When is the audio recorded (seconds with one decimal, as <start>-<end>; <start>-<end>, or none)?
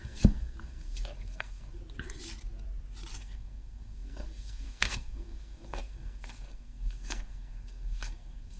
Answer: 1.8-3.2